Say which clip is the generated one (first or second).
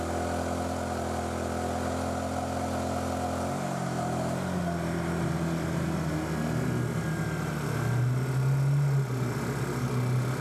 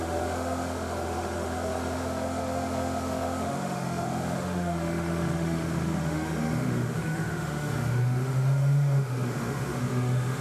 second